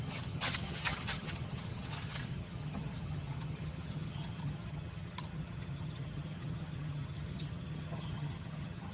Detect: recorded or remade remade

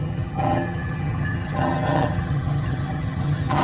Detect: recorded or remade remade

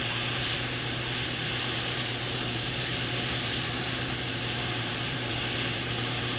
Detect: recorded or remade remade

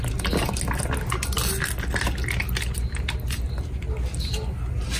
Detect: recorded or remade recorded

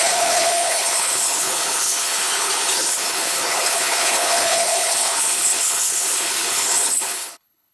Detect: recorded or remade remade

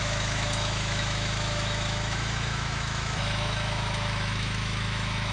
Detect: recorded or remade remade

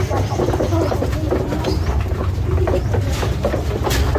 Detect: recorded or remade recorded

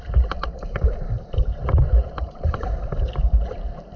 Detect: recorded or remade remade